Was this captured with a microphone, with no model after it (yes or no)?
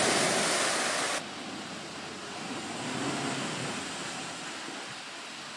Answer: yes